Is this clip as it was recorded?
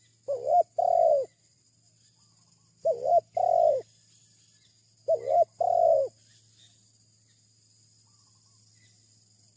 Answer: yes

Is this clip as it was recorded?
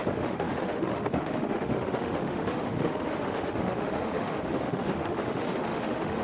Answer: no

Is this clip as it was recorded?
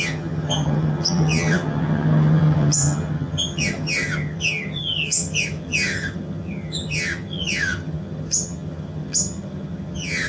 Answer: no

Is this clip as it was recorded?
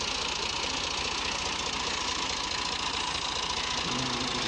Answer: yes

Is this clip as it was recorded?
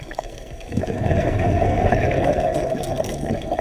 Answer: no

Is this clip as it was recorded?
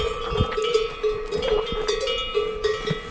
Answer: no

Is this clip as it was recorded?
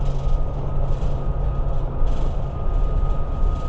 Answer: yes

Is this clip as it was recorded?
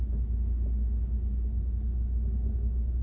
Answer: yes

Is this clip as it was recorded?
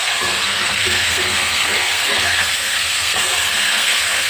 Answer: no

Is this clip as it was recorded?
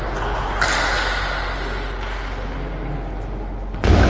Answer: yes